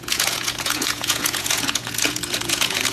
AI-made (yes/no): yes